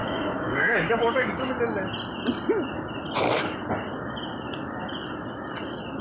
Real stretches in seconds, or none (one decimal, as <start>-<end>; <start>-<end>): 1.5-6.0